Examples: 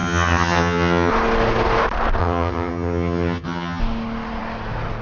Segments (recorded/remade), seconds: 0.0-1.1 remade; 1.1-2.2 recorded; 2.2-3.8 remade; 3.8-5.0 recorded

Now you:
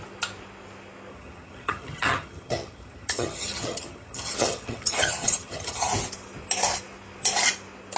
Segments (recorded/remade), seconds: 0.0-1.1 recorded; 1.1-5.9 remade; 5.9-8.0 recorded

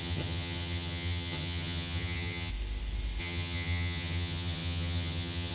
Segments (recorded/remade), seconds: 0.0-2.5 remade; 2.5-3.2 recorded; 3.2-5.5 remade

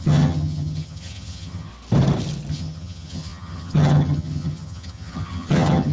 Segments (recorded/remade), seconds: 0.0-1.7 remade; 1.7-2.5 recorded; 2.5-5.9 remade

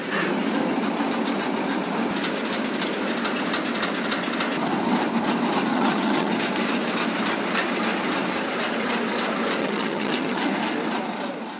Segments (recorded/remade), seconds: 0.0-5.7 recorded; 5.7-6.3 remade; 6.3-9.6 recorded; 9.6-10.5 remade; 10.5-11.6 recorded

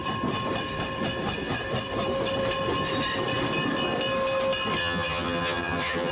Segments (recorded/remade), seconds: 0.0-4.8 recorded; 4.8-6.1 remade

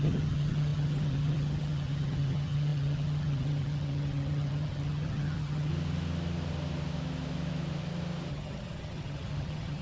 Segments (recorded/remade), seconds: 0.0-5.7 remade; 5.7-8.3 recorded; 8.3-9.8 remade